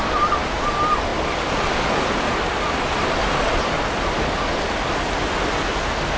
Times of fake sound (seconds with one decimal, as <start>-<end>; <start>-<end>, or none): none